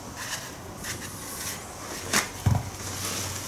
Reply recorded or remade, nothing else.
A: recorded